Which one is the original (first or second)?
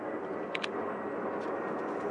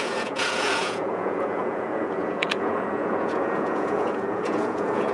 first